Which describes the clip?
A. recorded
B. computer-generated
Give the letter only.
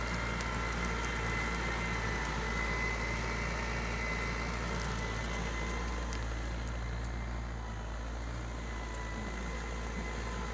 A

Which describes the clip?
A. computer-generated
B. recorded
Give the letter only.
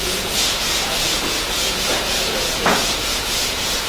A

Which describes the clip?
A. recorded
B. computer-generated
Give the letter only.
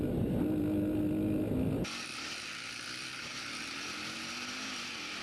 A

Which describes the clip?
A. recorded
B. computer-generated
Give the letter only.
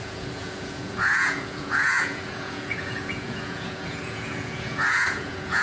B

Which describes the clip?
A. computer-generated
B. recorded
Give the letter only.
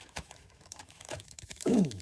A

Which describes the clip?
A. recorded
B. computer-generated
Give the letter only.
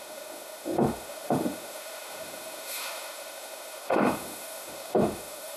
B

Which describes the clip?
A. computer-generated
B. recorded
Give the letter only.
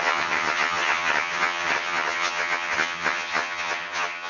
A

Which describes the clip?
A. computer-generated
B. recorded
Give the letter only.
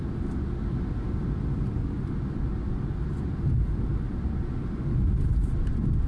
B